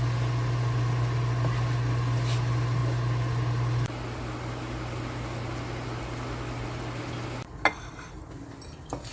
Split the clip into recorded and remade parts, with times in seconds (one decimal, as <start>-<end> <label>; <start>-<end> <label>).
0.0-9.1 recorded